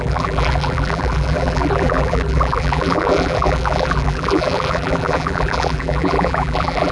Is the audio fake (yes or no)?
yes